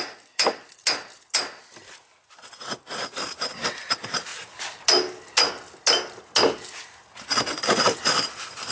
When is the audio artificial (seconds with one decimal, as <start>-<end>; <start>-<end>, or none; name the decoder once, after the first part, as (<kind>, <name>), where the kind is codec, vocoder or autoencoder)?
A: 0.0-0.8 (vocoder, BigVGAN v2); 3.8-4.3; 7.8-8.7